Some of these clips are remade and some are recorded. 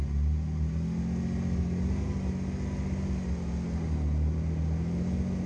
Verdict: recorded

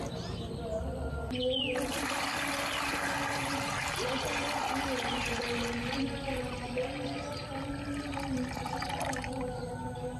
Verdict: recorded